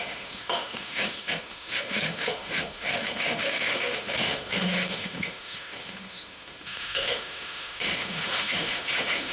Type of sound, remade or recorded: remade